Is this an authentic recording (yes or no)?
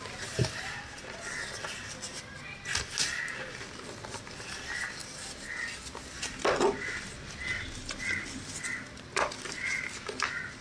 yes